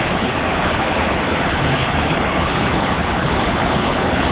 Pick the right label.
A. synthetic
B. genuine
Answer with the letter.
A